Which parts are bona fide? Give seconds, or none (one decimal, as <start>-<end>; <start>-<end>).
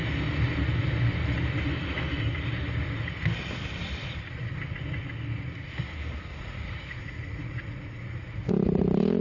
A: 0.0-6.3; 8.5-9.2